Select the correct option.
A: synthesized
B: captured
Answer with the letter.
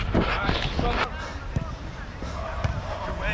B